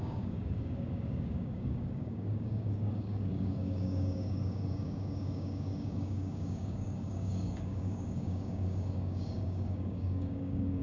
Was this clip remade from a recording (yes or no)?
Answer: yes